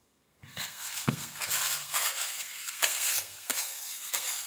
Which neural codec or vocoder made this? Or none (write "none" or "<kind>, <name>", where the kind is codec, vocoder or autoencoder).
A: codec, SNAC